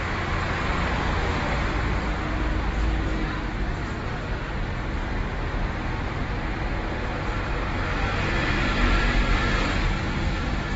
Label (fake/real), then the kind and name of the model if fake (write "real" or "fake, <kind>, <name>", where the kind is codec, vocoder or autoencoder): real